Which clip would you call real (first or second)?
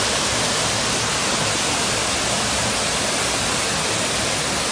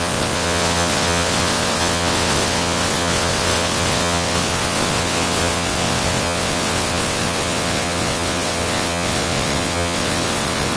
first